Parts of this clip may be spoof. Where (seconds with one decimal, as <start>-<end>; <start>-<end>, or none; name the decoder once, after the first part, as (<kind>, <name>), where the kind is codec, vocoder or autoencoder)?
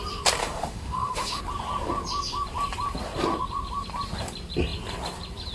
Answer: 0.4-1.4 (autoencoder, DAC-VAE)